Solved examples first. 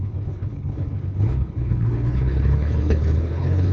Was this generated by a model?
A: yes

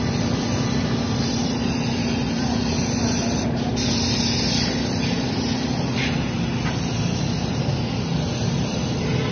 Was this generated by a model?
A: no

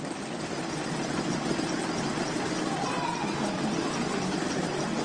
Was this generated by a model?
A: no